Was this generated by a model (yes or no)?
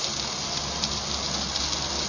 no